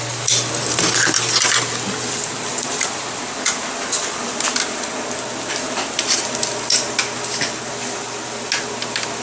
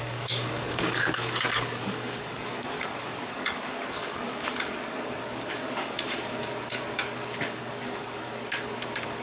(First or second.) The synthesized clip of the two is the second